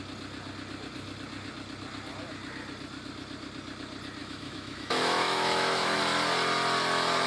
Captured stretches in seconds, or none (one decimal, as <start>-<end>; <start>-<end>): 0.0-4.2; 6.0-7.3